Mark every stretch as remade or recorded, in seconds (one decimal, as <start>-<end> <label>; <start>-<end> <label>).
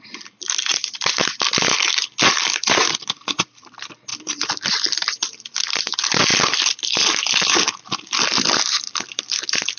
0.0-0.7 remade; 0.7-2.3 recorded; 2.3-9.8 remade